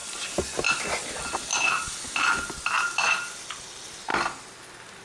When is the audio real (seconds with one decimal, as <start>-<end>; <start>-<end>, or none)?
0.0-3.0; 4.1-5.0